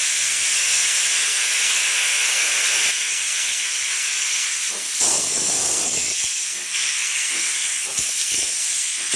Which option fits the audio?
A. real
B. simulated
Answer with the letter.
B